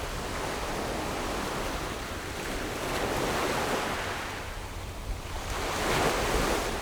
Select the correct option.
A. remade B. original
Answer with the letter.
B